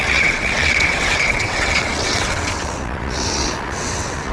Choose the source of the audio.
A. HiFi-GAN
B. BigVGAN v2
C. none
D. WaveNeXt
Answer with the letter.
D